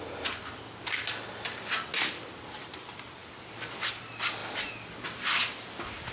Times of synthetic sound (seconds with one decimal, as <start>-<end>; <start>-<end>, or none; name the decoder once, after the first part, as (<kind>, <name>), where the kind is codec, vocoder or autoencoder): none